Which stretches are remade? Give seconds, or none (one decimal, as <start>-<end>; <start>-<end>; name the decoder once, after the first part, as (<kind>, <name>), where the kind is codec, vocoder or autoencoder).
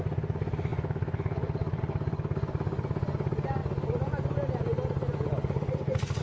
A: none